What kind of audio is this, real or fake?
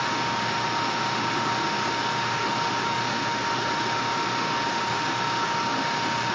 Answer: fake